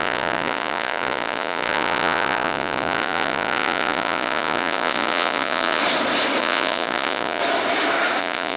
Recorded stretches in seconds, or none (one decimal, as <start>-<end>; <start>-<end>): 5.8-6.4; 7.4-8.2